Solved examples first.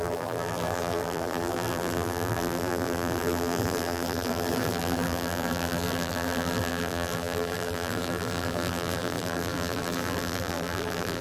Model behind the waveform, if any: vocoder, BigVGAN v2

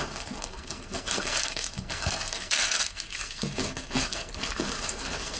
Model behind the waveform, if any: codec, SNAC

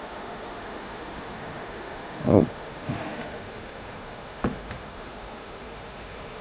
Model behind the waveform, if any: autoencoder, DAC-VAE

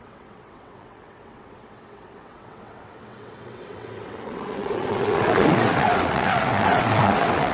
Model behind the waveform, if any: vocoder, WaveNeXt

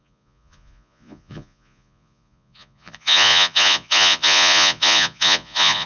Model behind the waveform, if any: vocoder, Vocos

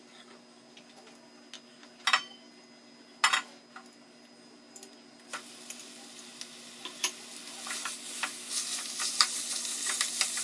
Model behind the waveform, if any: none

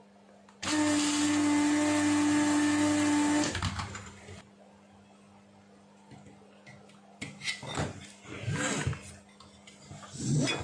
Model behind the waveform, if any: none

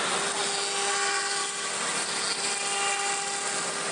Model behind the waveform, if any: none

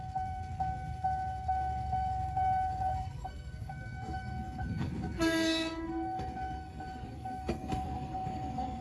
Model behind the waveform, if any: codec, SNAC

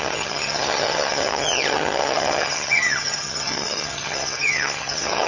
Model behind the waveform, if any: vocoder, HiFi-GAN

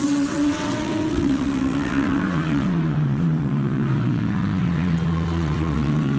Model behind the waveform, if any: vocoder, WaveNeXt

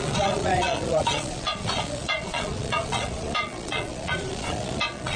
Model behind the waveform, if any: vocoder, Vocos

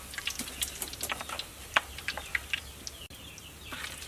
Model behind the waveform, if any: none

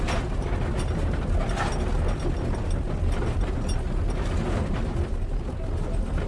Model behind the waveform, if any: none